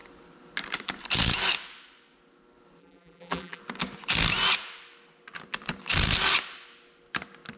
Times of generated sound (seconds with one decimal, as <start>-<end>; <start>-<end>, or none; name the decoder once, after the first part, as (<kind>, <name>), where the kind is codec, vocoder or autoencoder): 2.8-3.6 (vocoder, BigVGAN v2)